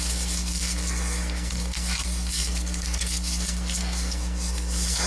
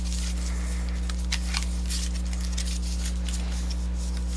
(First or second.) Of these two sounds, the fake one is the first